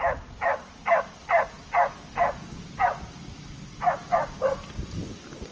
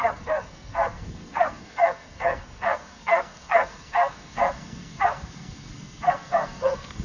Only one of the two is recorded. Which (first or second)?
first